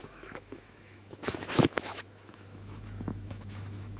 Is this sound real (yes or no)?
no